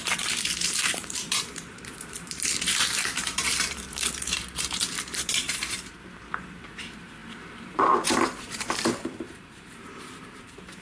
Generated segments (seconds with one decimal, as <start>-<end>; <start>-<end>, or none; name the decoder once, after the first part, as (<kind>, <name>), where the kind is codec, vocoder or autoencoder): 0.0-10.8 (vocoder, BigVGAN v2)